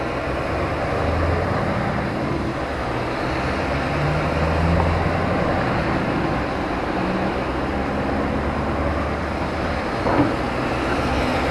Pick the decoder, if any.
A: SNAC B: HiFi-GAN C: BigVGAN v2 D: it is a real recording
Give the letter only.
D